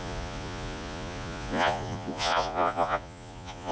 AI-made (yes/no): yes